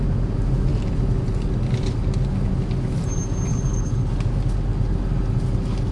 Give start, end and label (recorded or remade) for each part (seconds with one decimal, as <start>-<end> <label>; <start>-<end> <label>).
0.0-3.5 recorded; 3.5-4.1 remade; 4.1-5.9 recorded